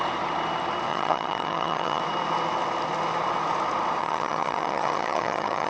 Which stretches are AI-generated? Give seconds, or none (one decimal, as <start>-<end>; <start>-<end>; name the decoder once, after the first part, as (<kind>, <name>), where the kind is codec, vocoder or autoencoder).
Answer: 0.9-2.0 (vocoder, HiFi-GAN); 4.0-5.7